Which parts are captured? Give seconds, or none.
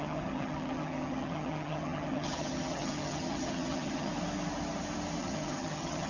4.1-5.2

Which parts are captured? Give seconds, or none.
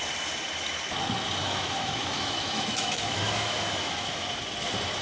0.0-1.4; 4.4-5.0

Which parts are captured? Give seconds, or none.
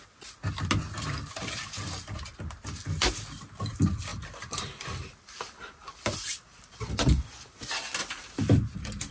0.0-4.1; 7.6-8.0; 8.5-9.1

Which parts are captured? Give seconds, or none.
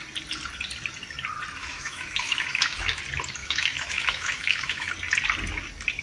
0.0-1.6; 3.0-3.4; 4.9-6.0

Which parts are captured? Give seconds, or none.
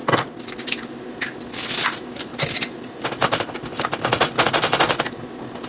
0.0-5.7